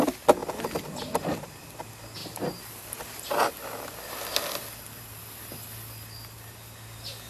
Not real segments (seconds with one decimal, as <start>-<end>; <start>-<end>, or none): 2.2-5.0